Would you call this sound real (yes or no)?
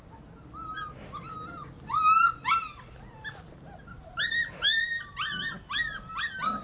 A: yes